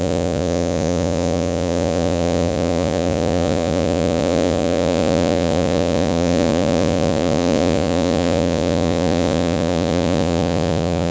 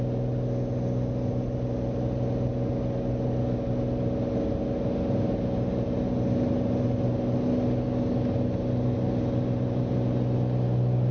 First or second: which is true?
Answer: second